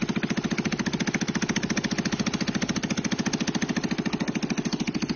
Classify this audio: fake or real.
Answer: real